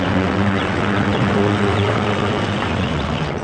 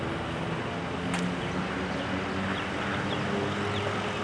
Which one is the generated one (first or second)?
first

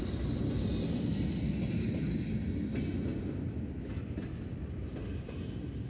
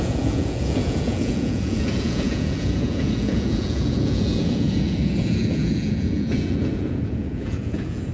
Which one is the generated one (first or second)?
second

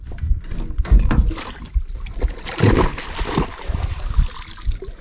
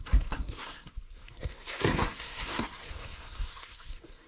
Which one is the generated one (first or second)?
second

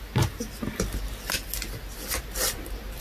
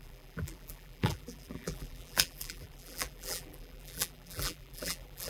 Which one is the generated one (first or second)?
second